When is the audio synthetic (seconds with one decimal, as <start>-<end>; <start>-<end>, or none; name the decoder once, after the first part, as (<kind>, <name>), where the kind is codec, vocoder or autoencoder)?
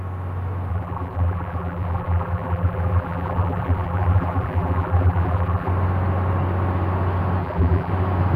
0.7-5.7 (vocoder, BigVGAN v2); 7.4-7.9